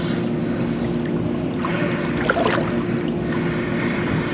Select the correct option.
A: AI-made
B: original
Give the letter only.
B